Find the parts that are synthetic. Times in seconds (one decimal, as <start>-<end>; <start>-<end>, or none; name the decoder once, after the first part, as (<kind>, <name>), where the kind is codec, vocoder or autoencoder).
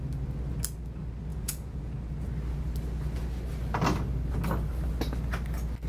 1.3-1.9 (vocoder, Vocos)